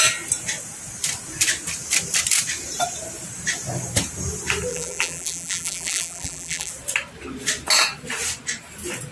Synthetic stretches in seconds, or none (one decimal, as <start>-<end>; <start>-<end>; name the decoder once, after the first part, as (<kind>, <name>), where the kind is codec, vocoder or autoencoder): 4.7-6.7 (vocoder, BigVGAN v2)